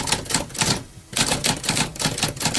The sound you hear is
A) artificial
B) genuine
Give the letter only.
B